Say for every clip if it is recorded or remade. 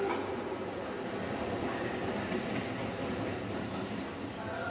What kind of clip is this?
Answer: recorded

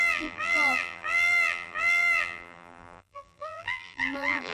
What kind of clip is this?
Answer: remade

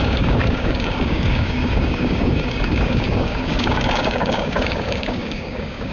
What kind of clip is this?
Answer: remade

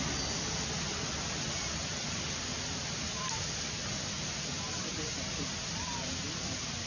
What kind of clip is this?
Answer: recorded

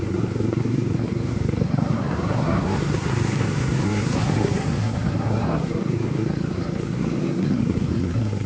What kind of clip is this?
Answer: remade